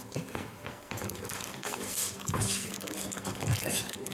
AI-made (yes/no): yes